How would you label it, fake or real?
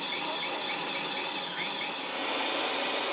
real